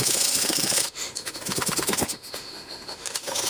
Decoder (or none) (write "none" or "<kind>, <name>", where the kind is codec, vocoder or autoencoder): autoencoder, DAC-VAE